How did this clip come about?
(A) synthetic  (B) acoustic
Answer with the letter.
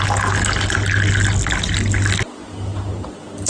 B